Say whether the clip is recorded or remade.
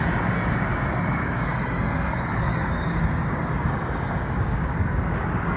remade